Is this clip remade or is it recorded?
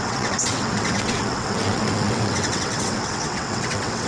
remade